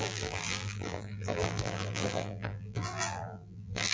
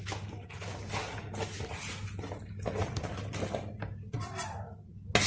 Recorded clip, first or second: second